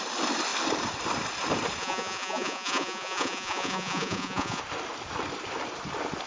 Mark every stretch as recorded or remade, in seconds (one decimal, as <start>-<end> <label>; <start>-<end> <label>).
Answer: 0.0-1.8 recorded; 1.8-4.6 remade; 4.6-6.3 recorded